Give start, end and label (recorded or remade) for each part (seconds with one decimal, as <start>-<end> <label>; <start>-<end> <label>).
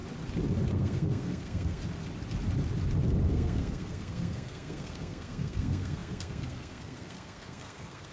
0.0-0.7 recorded; 0.7-1.8 remade; 1.8-3.3 recorded; 3.3-8.1 remade